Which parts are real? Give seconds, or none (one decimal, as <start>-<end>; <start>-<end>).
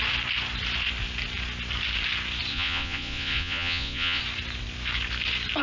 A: 0.0-2.5; 4.2-5.6